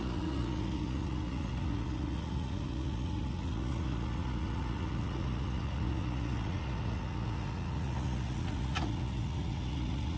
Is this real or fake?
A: fake